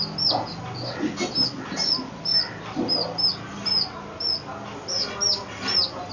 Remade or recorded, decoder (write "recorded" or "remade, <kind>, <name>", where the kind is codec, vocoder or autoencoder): recorded